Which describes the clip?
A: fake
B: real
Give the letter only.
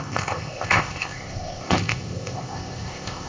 A